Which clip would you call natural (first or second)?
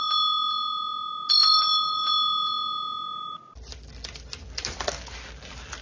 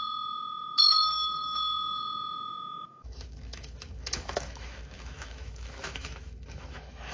first